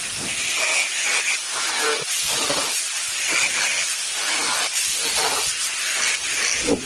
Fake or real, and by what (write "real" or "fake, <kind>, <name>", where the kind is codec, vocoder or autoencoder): real